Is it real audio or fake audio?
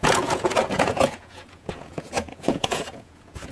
fake